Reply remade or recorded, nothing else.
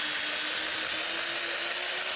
recorded